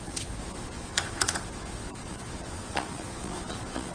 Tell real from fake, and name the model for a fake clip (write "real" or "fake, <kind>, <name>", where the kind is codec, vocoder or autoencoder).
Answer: fake, vocoder, Vocos